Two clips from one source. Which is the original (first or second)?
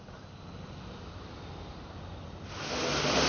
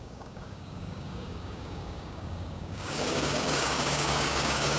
first